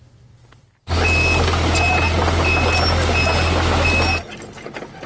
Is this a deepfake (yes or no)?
no